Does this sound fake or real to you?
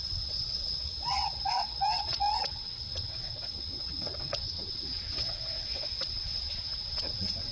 fake